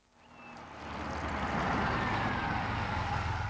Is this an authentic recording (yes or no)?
yes